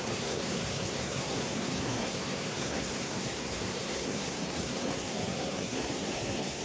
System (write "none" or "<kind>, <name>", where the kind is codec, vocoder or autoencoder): codec, SNAC